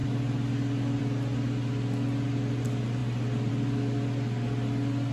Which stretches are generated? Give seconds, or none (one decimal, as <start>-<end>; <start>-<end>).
none